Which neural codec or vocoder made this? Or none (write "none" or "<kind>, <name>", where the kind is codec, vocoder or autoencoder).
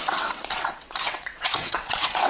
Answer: vocoder, WaveNeXt